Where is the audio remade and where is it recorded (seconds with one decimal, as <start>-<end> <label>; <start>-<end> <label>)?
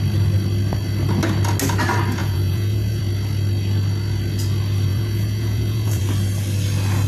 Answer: 0.0-2.2 recorded; 2.2-3.0 remade; 3.0-4.9 recorded; 4.9-6.0 remade; 6.0-7.1 recorded